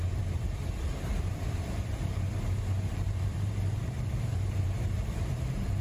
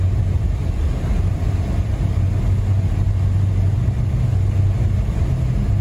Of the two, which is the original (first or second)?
second